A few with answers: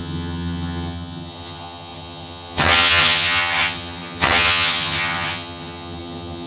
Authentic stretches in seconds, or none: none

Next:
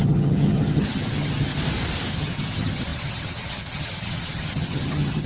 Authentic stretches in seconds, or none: 1.5-2.1